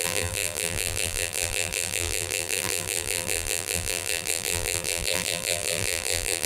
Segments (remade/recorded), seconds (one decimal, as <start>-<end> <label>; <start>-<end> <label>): 0.0-6.5 remade